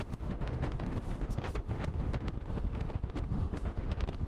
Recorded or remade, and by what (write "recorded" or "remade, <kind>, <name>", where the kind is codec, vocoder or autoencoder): remade, autoencoder, DAC-VAE